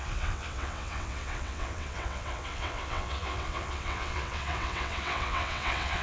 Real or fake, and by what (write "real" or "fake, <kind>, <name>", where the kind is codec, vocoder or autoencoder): fake, vocoder, WaveNeXt